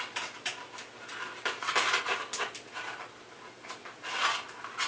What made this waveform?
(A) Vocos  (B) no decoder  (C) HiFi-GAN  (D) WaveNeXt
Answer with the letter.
B